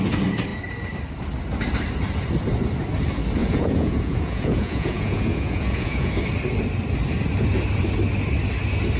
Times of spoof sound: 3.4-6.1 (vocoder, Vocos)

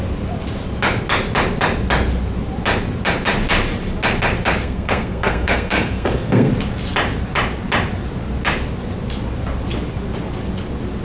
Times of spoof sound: 4.6-6.5 (codec, SNAC)

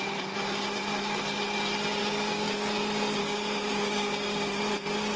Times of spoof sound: 2.0-2.5 (codec, DAC); 3.2-4.6

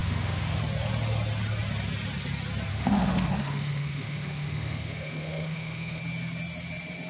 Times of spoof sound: 0.0-0.6 (autoencoder, DAC-VAE); 2.7-6.0

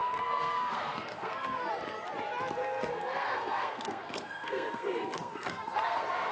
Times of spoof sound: 0.0-1.7 (codec, SNAC); 2.6-6.3

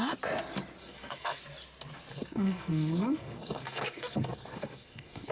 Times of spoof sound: 0.8-1.4 (codec, SNAC); 2.1-5.3